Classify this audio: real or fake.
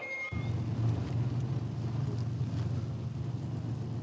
real